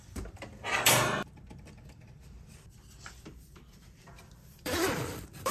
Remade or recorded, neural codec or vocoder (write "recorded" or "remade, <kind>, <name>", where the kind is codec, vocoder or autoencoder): remade, vocoder, BigVGAN v2